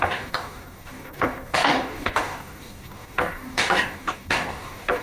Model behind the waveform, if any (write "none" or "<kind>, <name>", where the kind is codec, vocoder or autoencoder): codec, DAC